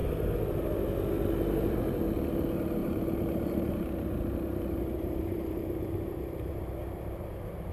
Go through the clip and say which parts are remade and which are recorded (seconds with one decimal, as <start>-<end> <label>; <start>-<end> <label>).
0.0-2.8 recorded; 2.8-6.5 remade; 6.5-7.7 recorded